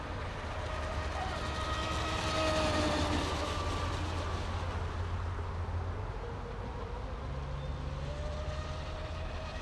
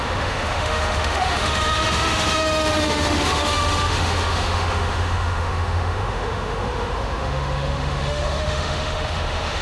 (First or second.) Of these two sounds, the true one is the first